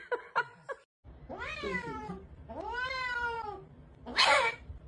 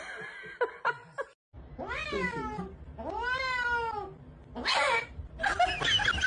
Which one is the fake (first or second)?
first